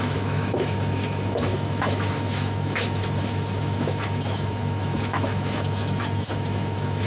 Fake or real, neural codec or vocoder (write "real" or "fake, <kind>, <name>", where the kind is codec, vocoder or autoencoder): fake, autoencoder, DAC-VAE